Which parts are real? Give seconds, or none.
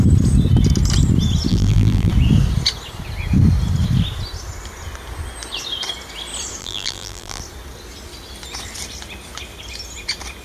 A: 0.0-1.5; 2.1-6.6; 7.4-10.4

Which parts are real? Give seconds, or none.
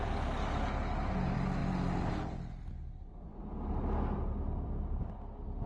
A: 0.0-5.7